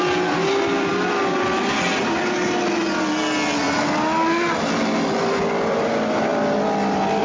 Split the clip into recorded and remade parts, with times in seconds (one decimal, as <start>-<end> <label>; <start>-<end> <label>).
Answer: 0.0-7.2 recorded